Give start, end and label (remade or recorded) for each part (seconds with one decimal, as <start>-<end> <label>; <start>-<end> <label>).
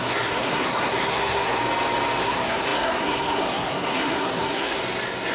0.0-1.6 remade; 1.6-2.2 recorded; 2.2-4.8 remade; 4.8-5.3 recorded